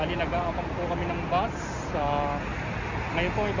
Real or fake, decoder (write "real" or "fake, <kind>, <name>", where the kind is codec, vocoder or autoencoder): real